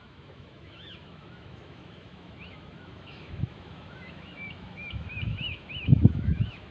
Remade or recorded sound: remade